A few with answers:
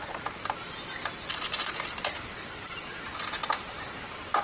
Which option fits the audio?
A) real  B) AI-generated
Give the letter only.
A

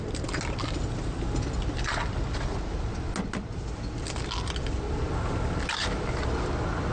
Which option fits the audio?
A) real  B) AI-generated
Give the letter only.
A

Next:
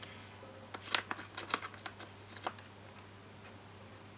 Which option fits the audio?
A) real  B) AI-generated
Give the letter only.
A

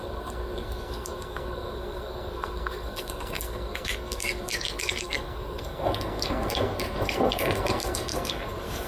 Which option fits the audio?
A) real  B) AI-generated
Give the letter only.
B